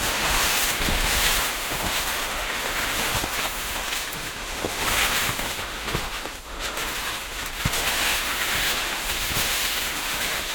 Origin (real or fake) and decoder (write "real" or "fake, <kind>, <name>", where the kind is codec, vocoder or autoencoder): fake, autoencoder, DAC-VAE